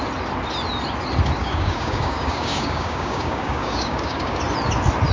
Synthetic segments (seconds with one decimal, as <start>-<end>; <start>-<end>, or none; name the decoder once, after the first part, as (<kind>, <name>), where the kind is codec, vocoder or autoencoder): 1.4-4.4 (codec, DAC)